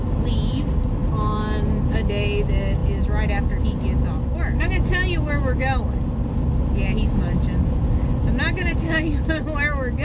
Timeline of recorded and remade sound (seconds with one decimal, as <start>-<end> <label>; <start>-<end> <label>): 0.0-10.0 recorded